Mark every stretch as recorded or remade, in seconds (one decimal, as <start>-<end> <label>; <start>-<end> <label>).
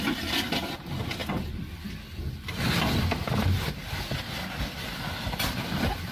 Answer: 0.0-6.1 recorded